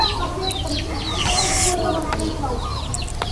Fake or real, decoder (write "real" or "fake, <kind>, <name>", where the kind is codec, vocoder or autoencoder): real